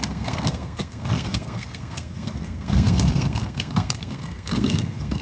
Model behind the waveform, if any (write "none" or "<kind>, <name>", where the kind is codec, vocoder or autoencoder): codec, SNAC